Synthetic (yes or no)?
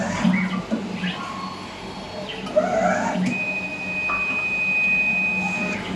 no